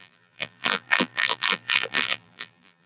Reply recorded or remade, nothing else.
remade